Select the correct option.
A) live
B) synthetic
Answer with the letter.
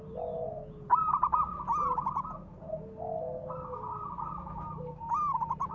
A